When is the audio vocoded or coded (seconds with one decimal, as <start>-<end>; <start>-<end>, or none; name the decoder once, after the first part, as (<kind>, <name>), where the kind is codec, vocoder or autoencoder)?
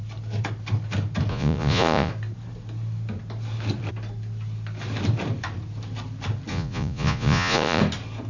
1.3-2.1 (vocoder, Vocos); 6.5-7.8